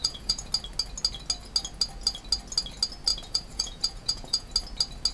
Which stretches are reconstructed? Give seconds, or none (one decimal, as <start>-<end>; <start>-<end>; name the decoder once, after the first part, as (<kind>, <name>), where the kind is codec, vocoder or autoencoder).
0.0-0.5 (vocoder, Vocos); 3.1-4.5